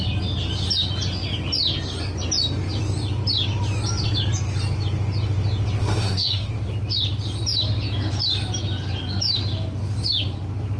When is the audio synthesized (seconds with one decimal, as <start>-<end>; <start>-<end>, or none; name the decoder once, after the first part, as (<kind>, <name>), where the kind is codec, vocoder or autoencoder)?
5.8-6.5 (codec, SNAC)